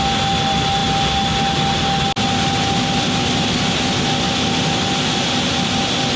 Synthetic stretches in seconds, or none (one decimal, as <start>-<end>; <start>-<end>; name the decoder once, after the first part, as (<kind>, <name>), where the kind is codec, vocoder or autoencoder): none